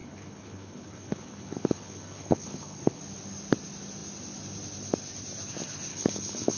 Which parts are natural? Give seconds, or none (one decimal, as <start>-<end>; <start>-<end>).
3.0-5.9